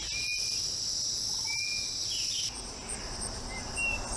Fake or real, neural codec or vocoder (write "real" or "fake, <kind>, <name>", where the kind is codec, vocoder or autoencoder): real